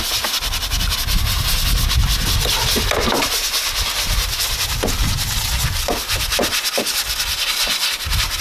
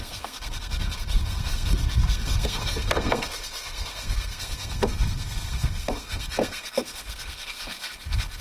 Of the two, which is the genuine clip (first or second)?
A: first